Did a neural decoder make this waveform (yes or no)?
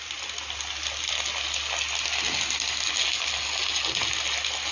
no